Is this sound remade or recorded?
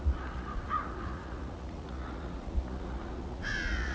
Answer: remade